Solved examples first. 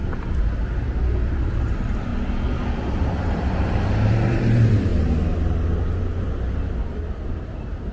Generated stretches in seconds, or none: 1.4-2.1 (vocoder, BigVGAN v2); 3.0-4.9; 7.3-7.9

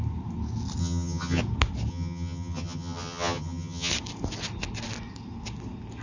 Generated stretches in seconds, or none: 0.8-1.4 (vocoder, HiFi-GAN); 1.9-3.9

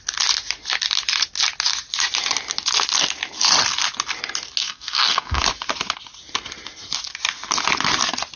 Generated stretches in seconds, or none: 4.6-5.4 (codec, SNAC)